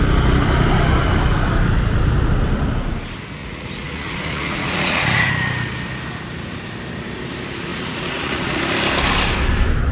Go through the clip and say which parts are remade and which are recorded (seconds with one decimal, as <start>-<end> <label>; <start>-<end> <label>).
0.0-3.4 recorded; 3.4-5.3 remade; 5.3-7.7 recorded; 7.7-8.6 remade; 8.6-9.9 recorded